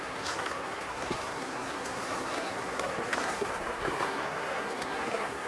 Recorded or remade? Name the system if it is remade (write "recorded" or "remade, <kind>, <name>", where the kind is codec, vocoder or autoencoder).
remade, codec, SNAC